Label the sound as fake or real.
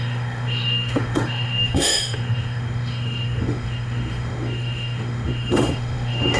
fake